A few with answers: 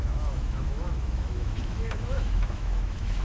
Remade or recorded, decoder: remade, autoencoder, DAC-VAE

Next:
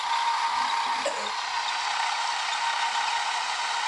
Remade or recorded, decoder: recorded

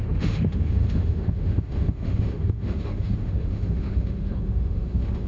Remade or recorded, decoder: remade, autoencoder, DAC-VAE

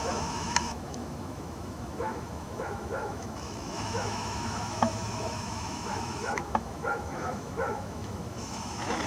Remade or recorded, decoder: remade, autoencoder, DAC-VAE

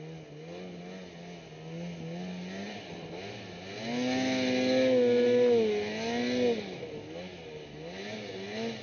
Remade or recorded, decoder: recorded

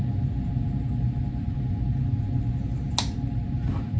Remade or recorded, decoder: recorded